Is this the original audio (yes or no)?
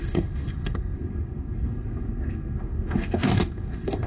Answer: no